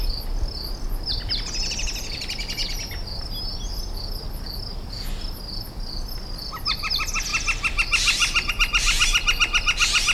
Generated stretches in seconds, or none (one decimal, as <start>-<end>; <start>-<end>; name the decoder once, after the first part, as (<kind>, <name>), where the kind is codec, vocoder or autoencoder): none